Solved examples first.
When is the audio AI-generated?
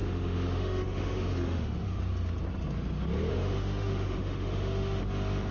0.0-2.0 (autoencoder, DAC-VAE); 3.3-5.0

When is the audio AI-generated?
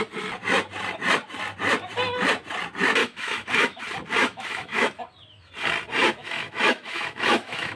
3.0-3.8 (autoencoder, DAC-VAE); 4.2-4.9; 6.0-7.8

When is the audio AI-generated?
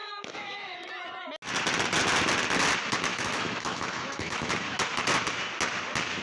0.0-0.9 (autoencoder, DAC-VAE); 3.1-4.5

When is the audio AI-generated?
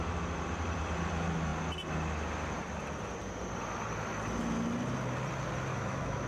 5.7-6.3 (autoencoder, DAC-VAE)